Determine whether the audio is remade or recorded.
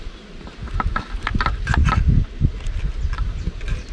recorded